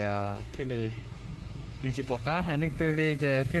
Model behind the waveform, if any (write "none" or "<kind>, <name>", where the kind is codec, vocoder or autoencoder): codec, SNAC